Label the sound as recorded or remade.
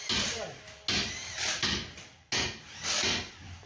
recorded